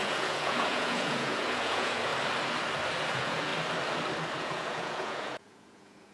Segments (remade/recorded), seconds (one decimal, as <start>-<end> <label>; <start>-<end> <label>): 0.0-2.1 remade; 2.1-3.1 recorded; 3.1-3.5 remade; 3.5-4.4 recorded; 4.4-6.1 remade